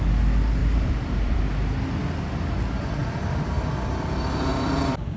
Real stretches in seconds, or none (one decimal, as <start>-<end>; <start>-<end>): 0.0-0.6; 1.4-3.0; 3.7-4.5